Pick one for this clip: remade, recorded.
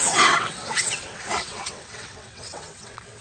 remade